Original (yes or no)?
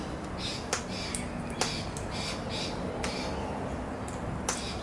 yes